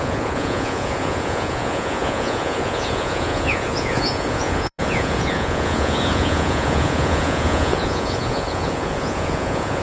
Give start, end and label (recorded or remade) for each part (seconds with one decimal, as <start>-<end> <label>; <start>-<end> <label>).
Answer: 0.0-9.8 remade